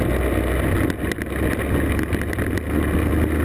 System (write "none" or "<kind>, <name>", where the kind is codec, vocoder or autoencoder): none